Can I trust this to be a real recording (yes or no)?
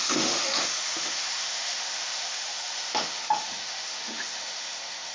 no